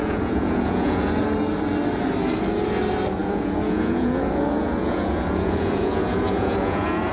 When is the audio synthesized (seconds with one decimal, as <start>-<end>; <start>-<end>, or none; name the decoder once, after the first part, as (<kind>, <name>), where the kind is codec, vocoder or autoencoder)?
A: 0.0-1.2 (vocoder, Vocos); 3.2-7.1